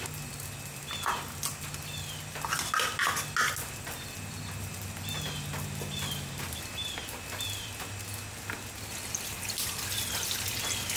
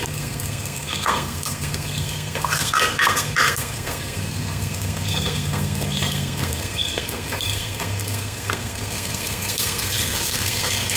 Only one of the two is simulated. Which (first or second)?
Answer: second